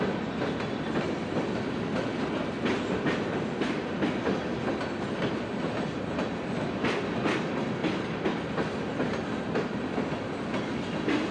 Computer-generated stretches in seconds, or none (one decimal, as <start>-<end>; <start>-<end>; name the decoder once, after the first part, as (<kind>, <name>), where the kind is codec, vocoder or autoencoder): none